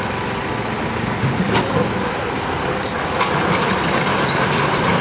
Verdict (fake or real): real